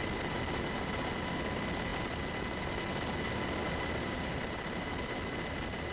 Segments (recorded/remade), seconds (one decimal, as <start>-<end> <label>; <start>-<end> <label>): 0.0-3.6 recorded; 3.6-5.0 remade; 5.0-5.9 recorded